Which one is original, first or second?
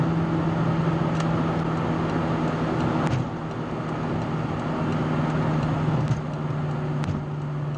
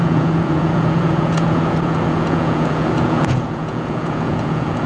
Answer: first